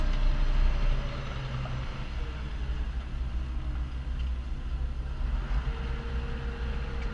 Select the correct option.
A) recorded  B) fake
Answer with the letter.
A